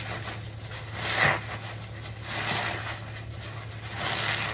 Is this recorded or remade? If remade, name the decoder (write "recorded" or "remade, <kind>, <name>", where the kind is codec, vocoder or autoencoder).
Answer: recorded